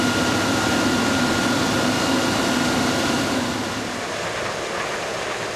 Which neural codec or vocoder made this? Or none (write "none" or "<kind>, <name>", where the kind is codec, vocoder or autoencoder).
none